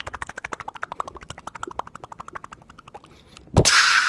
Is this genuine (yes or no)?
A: yes